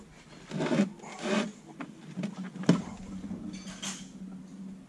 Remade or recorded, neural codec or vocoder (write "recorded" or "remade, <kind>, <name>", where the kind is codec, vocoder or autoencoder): recorded